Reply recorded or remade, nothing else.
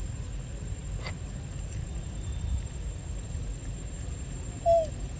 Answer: recorded